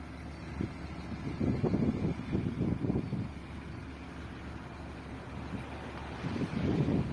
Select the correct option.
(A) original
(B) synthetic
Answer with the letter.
A